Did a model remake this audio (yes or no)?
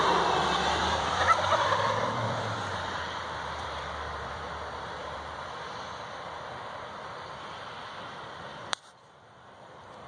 yes